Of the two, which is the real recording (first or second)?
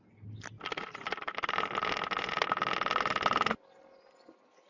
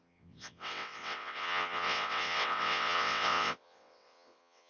first